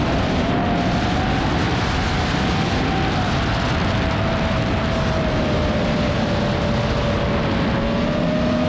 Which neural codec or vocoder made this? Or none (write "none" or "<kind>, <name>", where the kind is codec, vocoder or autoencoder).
none